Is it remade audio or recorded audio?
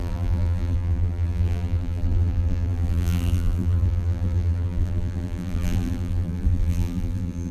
remade